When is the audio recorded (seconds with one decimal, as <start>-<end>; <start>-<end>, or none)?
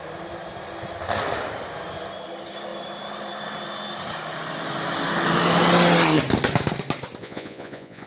0.0-7.2